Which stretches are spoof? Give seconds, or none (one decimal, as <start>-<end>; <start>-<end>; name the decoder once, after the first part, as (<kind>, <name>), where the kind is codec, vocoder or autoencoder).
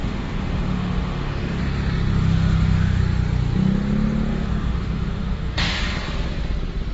0.0-1.6 (autoencoder, DAC-VAE); 2.2-3.0; 4.3-5.8